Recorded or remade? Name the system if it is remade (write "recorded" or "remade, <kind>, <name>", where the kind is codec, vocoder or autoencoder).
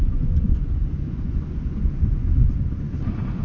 remade, vocoder, Vocos